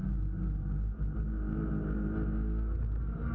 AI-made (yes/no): no